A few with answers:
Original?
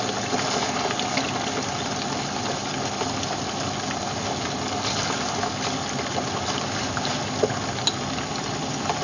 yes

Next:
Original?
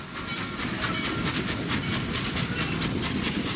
yes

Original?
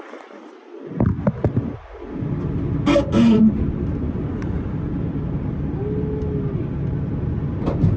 yes